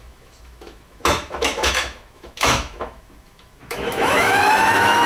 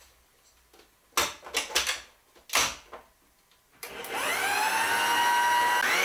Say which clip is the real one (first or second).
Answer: second